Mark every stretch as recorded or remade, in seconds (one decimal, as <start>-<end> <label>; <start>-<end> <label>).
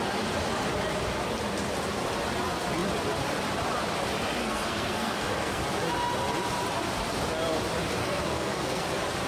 0.0-4.4 recorded; 4.4-5.6 remade; 5.6-8.0 recorded; 8.0-8.9 remade; 8.9-9.3 recorded